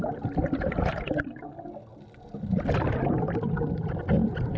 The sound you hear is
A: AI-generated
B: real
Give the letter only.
B